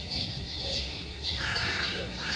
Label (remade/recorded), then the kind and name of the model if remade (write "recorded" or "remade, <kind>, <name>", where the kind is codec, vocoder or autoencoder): remade, codec, SNAC